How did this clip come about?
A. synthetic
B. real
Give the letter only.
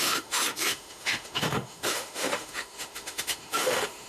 A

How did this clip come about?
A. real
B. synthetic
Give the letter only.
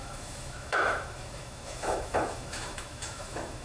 B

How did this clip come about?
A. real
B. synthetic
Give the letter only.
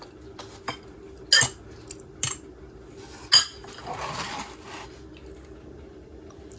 A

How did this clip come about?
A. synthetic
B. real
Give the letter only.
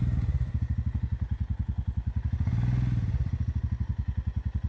B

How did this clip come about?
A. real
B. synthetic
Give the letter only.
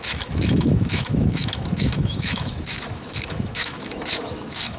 B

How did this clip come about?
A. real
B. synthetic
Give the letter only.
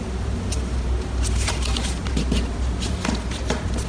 A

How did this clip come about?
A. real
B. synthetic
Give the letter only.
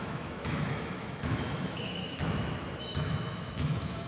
B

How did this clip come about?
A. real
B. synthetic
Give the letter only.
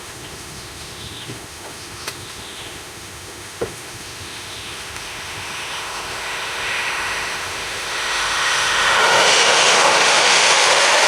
B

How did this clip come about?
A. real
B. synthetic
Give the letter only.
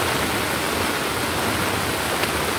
A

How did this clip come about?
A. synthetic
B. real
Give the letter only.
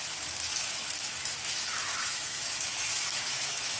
A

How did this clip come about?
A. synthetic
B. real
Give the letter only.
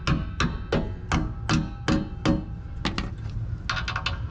B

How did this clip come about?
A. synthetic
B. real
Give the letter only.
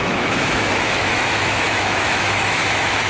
A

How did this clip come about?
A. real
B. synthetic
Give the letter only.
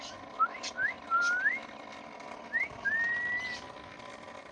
A